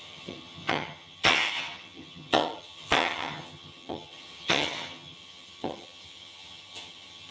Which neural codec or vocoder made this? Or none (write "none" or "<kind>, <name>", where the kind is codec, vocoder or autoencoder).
vocoder, HiFi-GAN